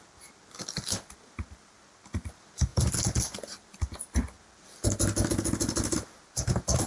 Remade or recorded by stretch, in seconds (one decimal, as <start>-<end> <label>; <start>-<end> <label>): 0.0-6.9 recorded